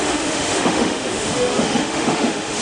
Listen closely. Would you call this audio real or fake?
fake